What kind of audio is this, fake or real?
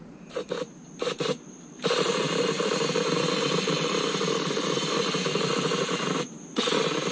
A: fake